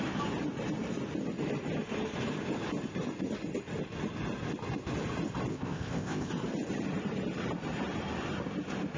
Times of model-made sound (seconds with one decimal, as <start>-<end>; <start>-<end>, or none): 5.5-6.3